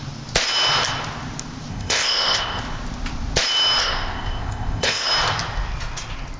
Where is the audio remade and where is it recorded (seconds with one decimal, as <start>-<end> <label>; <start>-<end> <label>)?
0.0-1.7 recorded; 1.7-2.6 remade; 2.6-3.8 recorded; 3.8-5.1 remade; 5.1-6.4 recorded